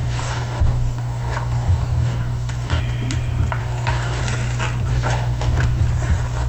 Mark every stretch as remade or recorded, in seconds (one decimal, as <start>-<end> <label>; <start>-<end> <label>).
0.0-2.8 remade; 2.8-3.6 recorded; 3.6-4.2 remade; 4.2-4.9 recorded; 4.9-5.8 remade; 5.8-6.5 recorded